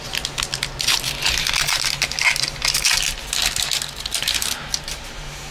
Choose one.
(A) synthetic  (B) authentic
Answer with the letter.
B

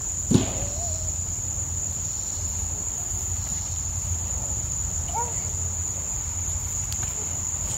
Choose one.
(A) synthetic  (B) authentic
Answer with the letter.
B